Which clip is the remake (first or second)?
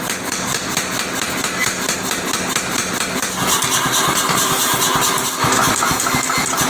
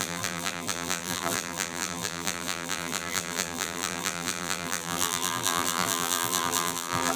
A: second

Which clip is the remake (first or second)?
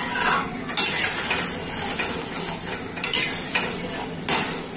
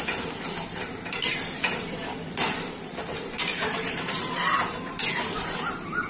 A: second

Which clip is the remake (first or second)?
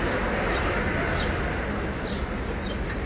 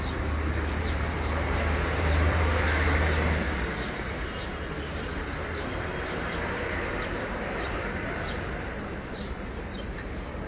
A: second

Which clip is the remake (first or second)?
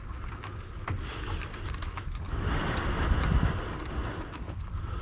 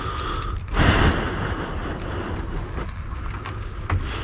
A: first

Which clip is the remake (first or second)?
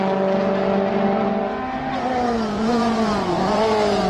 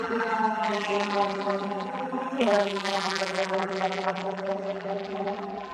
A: second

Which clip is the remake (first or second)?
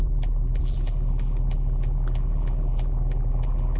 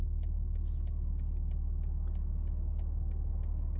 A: first